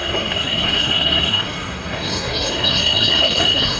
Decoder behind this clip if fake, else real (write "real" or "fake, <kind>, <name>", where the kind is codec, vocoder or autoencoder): fake, codec, SNAC